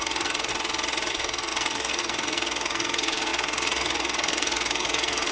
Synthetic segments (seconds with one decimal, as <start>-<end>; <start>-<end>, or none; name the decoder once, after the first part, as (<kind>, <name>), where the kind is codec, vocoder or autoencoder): 0.0-0.5 (codec, SNAC); 1.1-5.3